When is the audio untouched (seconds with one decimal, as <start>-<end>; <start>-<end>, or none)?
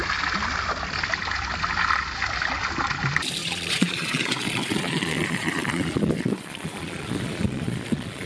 0.0-3.4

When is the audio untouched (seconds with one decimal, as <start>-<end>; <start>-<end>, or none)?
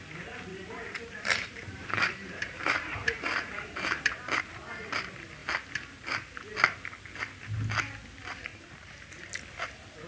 0.0-0.5; 4.4-5.4; 6.5-8.5; 9.3-10.1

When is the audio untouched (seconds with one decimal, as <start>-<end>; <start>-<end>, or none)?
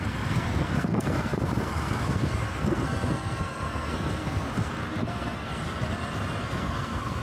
5.6-6.4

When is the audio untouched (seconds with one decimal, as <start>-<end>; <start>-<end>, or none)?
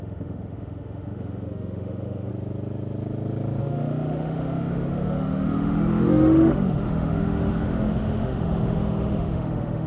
2.3-3.6